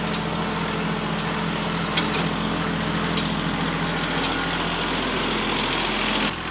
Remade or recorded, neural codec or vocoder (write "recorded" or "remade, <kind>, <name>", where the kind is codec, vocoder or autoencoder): recorded